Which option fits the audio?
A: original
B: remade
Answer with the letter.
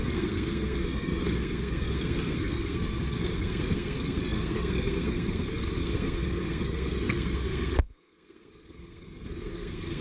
B